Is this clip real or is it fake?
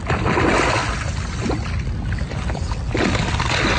real